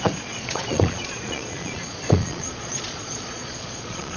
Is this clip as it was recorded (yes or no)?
no